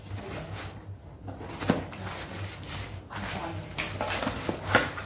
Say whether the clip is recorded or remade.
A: recorded